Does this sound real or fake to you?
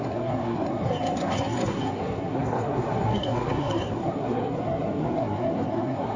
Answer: fake